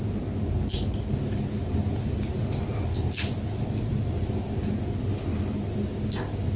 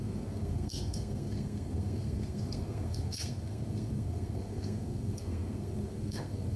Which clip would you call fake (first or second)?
second